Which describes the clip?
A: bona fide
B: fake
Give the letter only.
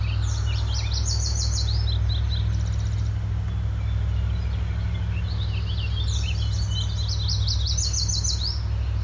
A